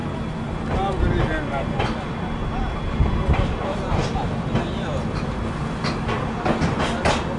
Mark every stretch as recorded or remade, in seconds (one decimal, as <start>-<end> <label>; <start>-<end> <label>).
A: 0.0-7.4 recorded